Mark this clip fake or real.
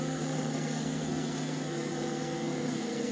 fake